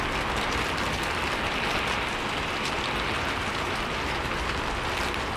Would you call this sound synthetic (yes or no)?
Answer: no